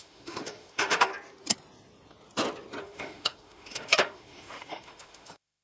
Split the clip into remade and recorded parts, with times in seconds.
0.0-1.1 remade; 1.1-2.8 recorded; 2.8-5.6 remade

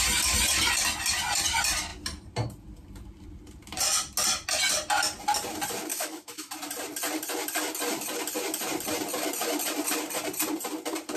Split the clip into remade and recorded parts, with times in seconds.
0.0-5.9 recorded; 5.9-6.5 remade; 6.5-11.2 recorded

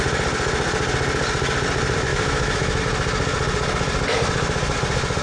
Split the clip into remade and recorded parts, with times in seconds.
0.0-2.1 recorded; 2.1-2.8 remade; 2.8-5.2 recorded

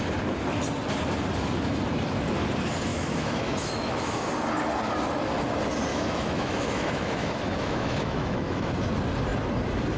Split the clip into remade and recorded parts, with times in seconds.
0.0-2.9 recorded; 2.9-4.3 remade; 4.3-5.9 recorded; 5.9-8.7 remade; 8.7-10.0 recorded

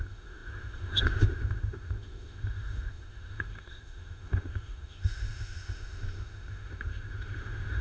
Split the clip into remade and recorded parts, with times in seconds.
0.0-7.8 remade

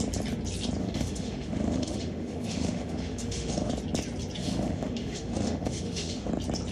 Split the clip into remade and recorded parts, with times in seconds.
0.0-0.8 recorded; 0.8-3.7 remade; 3.7-4.4 recorded; 4.4-6.3 remade; 6.3-6.7 recorded

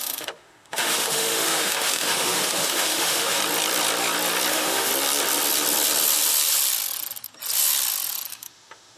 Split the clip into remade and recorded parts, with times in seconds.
0.0-3.4 remade; 3.4-4.5 recorded; 4.5-4.9 remade; 4.9-8.3 recorded; 8.3-9.0 remade